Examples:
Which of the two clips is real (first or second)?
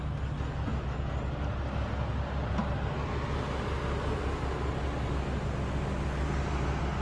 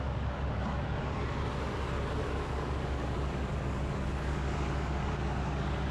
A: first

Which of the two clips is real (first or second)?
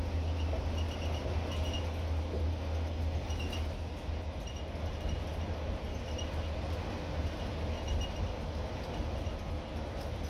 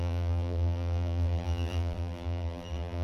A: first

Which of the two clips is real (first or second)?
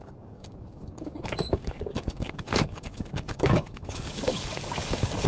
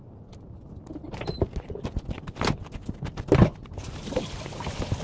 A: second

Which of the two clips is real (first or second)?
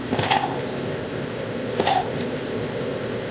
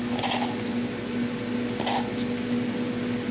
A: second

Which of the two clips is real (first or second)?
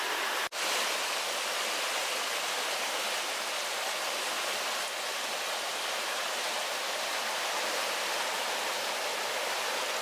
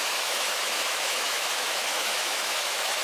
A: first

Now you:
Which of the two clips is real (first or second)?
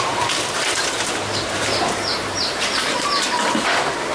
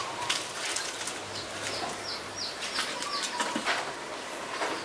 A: second